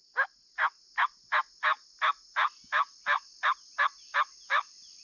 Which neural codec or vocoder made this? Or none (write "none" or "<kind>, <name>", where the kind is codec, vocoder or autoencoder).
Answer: none